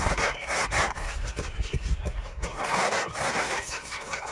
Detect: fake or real fake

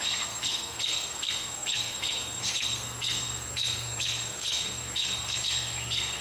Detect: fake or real fake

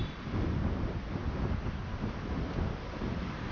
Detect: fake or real real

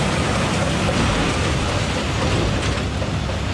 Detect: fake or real real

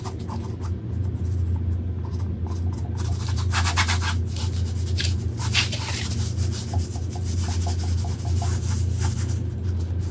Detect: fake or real real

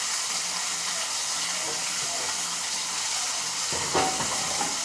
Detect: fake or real real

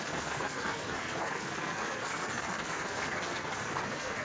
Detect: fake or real fake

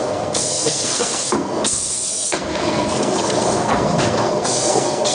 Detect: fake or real fake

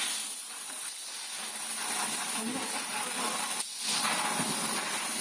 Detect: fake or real real